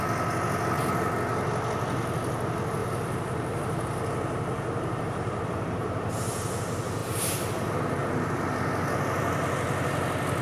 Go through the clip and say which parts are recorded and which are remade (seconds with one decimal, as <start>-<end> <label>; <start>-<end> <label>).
0.0-2.8 recorded; 2.8-6.2 remade; 6.2-10.4 recorded